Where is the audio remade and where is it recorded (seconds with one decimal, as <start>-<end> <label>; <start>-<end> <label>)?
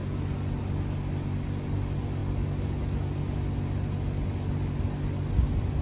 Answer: 0.0-5.8 recorded